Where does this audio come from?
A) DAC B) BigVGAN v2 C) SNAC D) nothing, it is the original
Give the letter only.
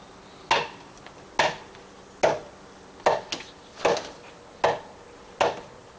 D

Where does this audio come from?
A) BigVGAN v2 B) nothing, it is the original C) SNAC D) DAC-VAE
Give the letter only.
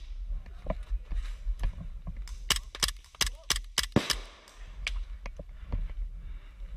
B